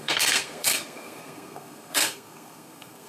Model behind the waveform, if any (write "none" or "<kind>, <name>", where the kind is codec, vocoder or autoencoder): codec, SNAC